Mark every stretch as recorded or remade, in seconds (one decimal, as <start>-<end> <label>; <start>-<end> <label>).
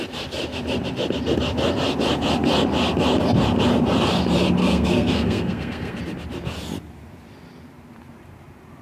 0.0-4.6 recorded; 4.6-6.0 remade; 6.0-8.8 recorded